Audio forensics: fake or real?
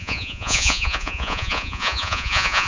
fake